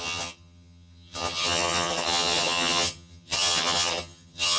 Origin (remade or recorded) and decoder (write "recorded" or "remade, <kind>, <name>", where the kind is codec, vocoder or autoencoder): remade, vocoder, HiFi-GAN